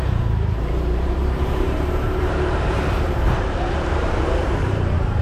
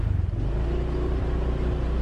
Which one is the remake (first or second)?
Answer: first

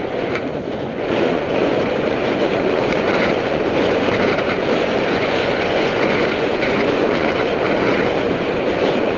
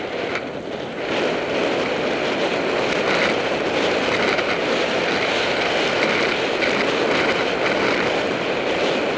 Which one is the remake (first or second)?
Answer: first